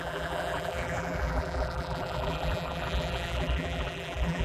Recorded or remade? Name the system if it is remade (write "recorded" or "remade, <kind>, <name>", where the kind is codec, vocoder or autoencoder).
remade, vocoder, BigVGAN v2